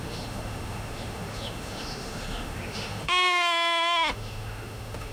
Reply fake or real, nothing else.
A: fake